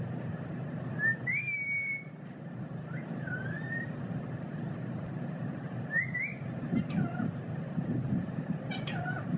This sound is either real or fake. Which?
fake